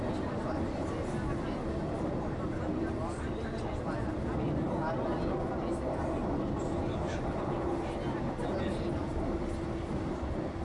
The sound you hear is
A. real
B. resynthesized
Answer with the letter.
A